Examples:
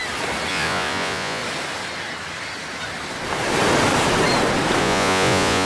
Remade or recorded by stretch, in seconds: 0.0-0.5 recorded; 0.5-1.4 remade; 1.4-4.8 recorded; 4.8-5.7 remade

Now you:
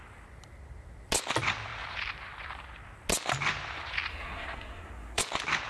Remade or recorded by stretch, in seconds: 0.0-4.1 recorded; 4.1-5.2 remade; 5.2-5.7 recorded